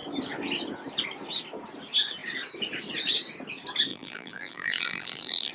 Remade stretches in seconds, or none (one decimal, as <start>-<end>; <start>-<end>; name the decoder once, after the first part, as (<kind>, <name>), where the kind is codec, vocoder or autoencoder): 3.9-5.5 (vocoder, BigVGAN v2)